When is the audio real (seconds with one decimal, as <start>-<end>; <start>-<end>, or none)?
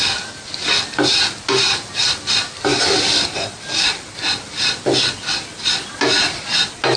0.0-7.0